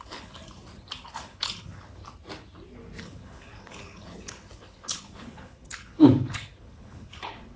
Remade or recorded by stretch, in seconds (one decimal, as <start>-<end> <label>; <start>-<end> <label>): 0.0-0.4 remade; 0.4-1.1 recorded; 1.1-2.0 remade; 2.0-3.0 recorded; 3.0-7.6 remade